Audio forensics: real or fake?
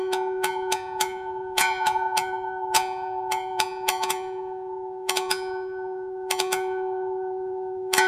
fake